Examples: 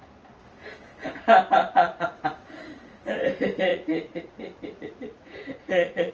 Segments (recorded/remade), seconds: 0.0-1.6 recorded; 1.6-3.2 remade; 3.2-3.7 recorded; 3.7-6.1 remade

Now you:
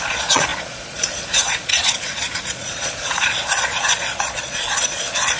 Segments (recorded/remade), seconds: 0.0-5.4 remade

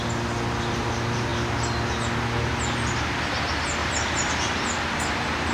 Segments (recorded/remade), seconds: 0.0-3.8 recorded; 3.8-4.6 remade; 4.6-5.5 recorded